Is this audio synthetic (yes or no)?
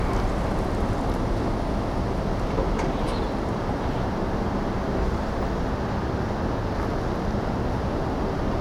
no